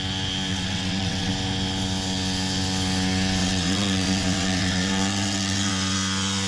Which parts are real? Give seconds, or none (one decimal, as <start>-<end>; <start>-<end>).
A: 0.0-0.5; 1.3-3.4; 5.7-6.5